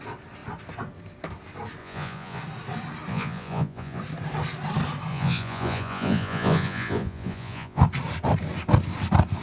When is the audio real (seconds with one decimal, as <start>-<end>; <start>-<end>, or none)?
0.0-1.8; 2.4-3.1; 4.0-5.1; 7.8-9.4